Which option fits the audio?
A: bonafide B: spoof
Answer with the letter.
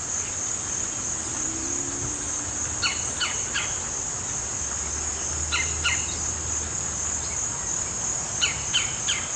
A